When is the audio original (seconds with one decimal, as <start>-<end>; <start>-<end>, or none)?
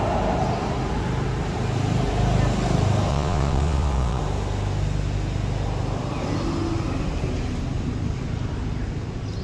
0.0-3.1; 4.2-9.4